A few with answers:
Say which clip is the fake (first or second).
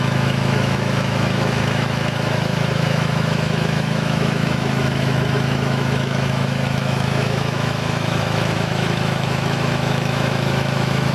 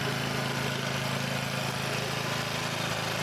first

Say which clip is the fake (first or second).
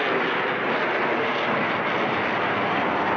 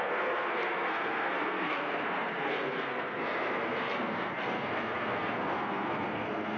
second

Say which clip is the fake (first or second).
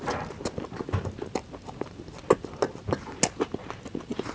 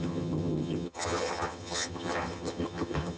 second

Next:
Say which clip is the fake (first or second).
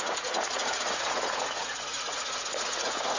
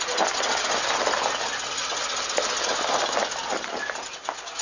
first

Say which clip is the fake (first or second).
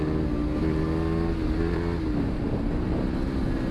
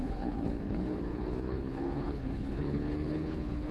second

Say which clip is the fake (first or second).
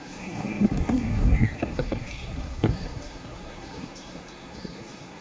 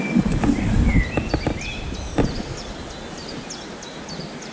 first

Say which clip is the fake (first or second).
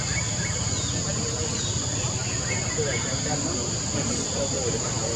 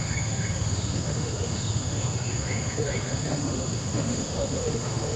second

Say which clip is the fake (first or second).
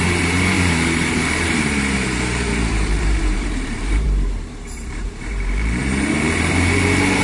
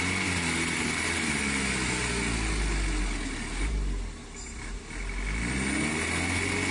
first